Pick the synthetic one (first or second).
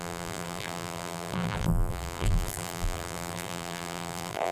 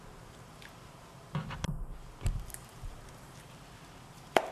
first